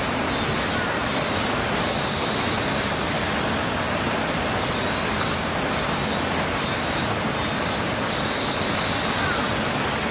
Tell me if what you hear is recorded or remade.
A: recorded